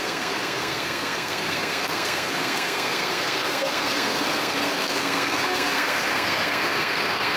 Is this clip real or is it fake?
fake